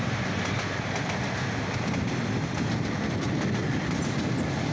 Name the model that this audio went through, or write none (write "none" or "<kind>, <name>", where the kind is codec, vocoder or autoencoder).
none